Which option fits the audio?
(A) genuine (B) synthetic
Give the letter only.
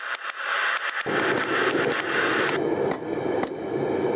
A